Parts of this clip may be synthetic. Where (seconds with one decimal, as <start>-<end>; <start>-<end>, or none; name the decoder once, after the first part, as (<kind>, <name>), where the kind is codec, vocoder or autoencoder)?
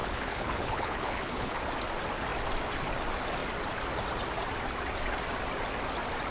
0.0-1.6 (codec, HILCodec)